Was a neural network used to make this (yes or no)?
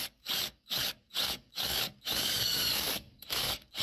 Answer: yes